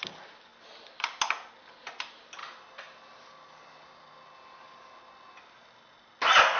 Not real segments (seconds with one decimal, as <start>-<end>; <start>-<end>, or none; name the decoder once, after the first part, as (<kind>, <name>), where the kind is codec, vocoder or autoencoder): none